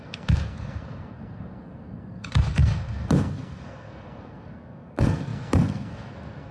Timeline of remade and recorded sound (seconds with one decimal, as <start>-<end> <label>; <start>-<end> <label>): 0.0-6.5 remade